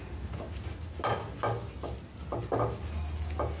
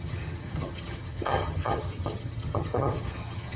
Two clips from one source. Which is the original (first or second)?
first